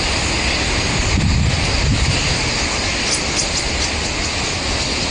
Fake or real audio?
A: real